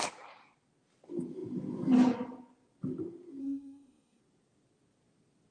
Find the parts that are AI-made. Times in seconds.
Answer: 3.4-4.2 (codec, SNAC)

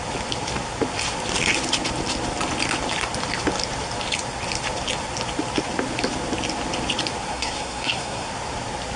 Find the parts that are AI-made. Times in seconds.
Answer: 7.3-8.3 (codec, SNAC)

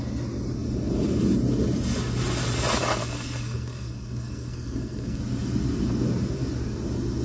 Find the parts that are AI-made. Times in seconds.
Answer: 3.0-5.2 (codec, SNAC)

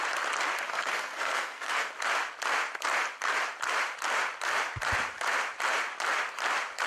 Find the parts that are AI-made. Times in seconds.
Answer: 0.7-1.9 (codec, SNAC)

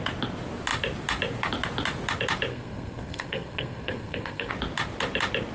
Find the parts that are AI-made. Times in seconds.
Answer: 2.5-4.5 (codec, SNAC)

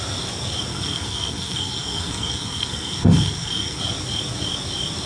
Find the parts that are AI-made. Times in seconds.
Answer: 0.7-3.8 (codec, SNAC)